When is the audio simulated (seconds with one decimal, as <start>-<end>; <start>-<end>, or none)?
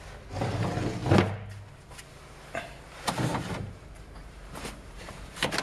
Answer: 3.3-5.6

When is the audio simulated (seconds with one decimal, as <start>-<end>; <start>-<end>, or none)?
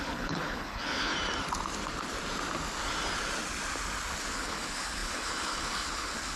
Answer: 0.0-1.1; 4.2-6.4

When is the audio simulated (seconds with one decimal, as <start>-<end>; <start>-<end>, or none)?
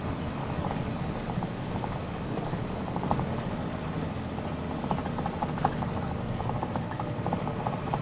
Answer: 0.4-4.1; 5.4-7.6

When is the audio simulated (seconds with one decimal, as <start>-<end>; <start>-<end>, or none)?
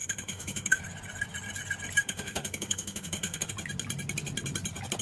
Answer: 0.0-0.8; 2.0-3.5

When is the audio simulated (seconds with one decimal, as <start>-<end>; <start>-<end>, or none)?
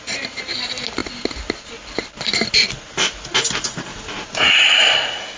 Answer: 3.9-4.5